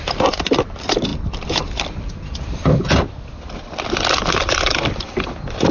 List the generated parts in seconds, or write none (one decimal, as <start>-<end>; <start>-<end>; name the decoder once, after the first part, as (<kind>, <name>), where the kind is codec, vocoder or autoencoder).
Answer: 0.0-1.1 (vocoder, BigVGAN v2); 4.5-5.7

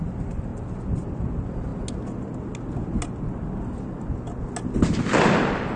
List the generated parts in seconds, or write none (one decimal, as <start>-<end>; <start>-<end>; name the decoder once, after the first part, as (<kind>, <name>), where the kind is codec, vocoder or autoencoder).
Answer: 0.0-0.5 (vocoder, BigVGAN v2); 1.1-1.7; 5.2-5.8

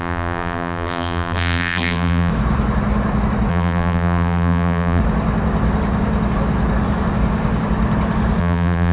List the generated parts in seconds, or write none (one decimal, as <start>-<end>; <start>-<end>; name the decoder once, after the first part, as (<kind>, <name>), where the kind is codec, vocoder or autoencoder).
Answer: 0.0-2.3 (vocoder, BigVGAN v2); 3.5-5.0; 8.4-8.9

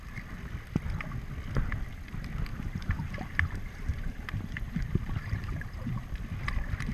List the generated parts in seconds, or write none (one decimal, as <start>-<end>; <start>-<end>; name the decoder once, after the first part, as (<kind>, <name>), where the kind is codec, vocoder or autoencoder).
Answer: 2.5-6.2 (vocoder, BigVGAN v2)

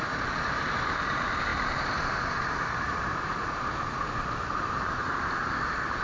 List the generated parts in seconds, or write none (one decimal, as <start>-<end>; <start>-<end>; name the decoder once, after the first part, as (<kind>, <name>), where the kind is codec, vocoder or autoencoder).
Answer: 0.0-3.3 (vocoder, BigVGAN v2); 4.4-6.0

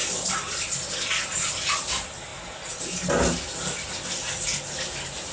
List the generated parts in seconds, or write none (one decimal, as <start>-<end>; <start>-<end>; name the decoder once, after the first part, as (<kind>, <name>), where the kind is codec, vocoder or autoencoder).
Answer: 0.0-0.9 (vocoder, BigVGAN v2)

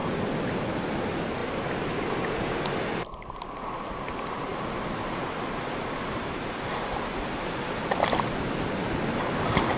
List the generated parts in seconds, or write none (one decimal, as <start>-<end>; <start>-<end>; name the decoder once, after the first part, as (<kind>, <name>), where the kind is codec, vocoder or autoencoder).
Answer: 0.0-0.5 (vocoder, BigVGAN v2)